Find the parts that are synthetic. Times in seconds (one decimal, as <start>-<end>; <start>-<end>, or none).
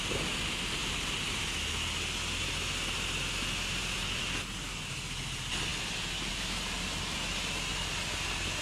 none